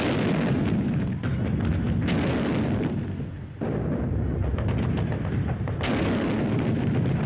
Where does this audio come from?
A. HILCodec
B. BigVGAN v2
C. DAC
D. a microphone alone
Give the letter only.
D